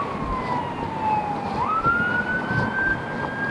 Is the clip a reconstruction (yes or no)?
no